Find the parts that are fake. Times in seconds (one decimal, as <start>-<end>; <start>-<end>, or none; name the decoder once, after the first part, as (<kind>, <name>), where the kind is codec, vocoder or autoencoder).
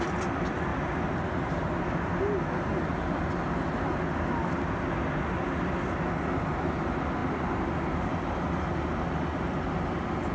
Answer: none